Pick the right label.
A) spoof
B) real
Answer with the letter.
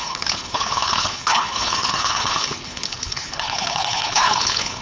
A